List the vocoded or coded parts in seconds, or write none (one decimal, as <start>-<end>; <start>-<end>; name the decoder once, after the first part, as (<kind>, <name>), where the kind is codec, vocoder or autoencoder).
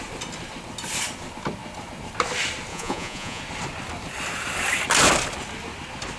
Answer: 2.7-3.4 (vocoder, Vocos)